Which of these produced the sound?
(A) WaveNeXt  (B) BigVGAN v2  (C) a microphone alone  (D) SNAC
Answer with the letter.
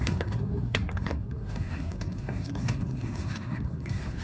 D